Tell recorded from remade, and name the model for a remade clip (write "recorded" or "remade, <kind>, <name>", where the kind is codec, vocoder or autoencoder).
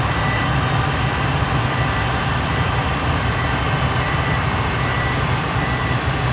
remade, vocoder, BigVGAN v2